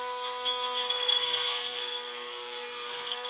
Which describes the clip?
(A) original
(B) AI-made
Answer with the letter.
B